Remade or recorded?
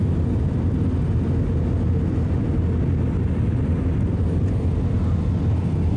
recorded